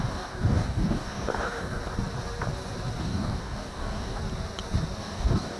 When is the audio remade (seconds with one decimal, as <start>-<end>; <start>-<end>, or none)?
0.0-1.8; 3.0-4.2; 5.0-5.6